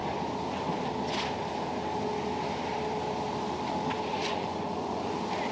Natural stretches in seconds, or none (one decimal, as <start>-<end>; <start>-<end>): 0.0-4.1; 5.1-5.5